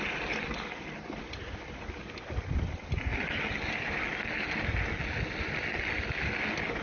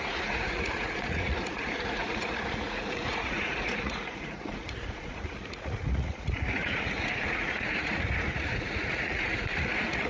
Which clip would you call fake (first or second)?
second